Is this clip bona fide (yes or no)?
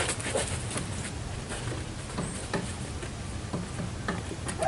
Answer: yes